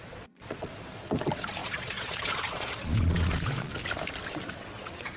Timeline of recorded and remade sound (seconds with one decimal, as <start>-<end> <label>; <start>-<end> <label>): 0.0-3.7 remade; 3.7-4.3 recorded; 4.3-5.2 remade